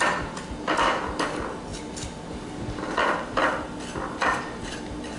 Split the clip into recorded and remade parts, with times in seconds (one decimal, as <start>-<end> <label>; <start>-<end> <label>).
0.0-5.2 recorded